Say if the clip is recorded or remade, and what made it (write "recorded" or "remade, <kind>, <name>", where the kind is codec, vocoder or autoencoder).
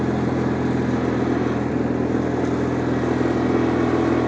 recorded